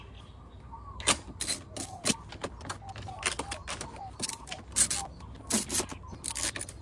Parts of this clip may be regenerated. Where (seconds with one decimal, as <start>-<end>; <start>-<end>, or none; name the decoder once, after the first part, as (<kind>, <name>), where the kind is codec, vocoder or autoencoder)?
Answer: none